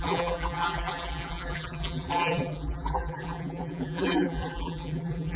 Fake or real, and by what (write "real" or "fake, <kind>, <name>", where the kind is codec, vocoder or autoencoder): fake, vocoder, BigVGAN v2